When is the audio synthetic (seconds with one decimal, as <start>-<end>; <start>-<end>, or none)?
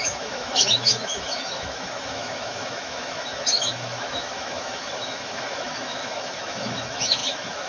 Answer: 0.0-7.7